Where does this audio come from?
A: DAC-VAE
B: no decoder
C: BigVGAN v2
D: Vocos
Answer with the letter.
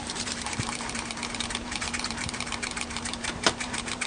C